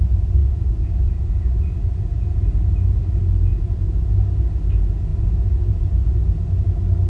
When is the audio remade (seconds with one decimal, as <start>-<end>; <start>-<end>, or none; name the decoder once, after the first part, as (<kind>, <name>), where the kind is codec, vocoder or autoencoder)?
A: 0.4-2.4 (vocoder, Vocos); 3.5-4.1; 5.1-6.2

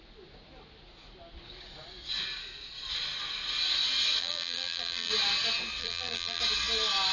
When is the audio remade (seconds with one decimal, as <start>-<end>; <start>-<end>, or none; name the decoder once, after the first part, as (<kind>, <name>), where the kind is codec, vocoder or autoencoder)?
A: 4.2-5.1 (vocoder, BigVGAN v2); 5.8-6.4

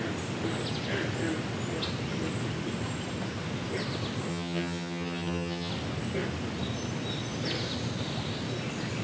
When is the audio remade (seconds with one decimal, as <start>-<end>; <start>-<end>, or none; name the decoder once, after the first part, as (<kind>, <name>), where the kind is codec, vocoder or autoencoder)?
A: 4.3-5.7 (vocoder, HiFi-GAN)

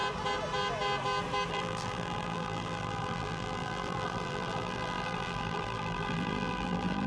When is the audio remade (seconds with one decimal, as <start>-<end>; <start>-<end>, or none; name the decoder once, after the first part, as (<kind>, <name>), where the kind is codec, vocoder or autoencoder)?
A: 1.5-7.1 (vocoder, BigVGAN v2)

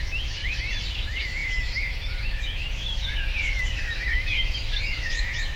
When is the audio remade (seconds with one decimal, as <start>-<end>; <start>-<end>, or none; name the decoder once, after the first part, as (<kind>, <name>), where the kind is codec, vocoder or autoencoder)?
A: 0.0-0.4 (autoencoder, DAC-VAE); 0.9-5.6